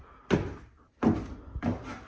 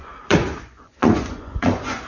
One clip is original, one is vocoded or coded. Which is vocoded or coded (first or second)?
second